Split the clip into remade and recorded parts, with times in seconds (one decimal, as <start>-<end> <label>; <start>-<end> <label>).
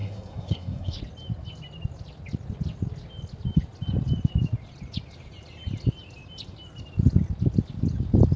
0.0-1.0 remade; 1.0-8.4 recorded